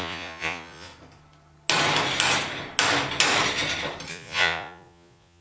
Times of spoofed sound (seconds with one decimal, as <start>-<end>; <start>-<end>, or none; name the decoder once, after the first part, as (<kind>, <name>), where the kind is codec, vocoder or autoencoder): 0.0-0.9 (vocoder, Vocos); 4.1-5.4